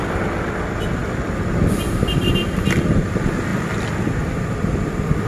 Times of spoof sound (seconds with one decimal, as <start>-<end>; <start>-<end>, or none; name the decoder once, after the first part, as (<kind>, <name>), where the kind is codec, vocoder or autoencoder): none